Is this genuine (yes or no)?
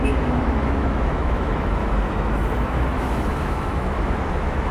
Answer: no